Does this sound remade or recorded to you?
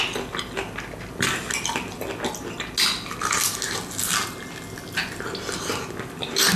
recorded